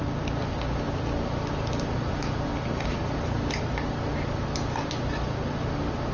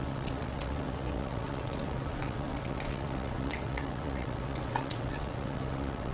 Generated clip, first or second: second